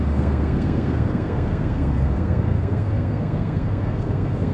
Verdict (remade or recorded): remade